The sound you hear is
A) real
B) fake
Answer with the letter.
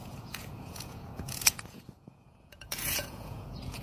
B